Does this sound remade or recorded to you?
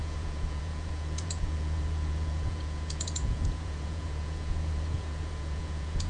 remade